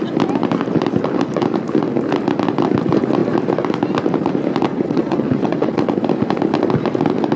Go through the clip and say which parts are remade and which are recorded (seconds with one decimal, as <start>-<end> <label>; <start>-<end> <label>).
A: 0.0-4.7 recorded; 4.7-5.8 remade; 5.8-7.4 recorded